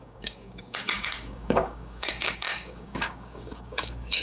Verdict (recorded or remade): remade